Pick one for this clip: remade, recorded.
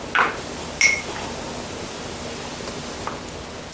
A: recorded